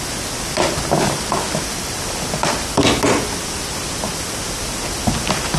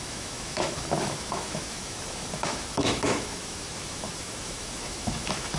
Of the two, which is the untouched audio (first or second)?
first